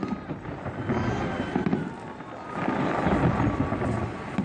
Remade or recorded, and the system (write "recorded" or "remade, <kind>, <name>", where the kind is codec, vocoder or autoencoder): recorded